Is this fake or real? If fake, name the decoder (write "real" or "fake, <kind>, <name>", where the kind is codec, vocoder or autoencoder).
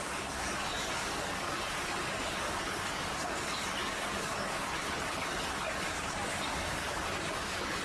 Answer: fake, codec, DAC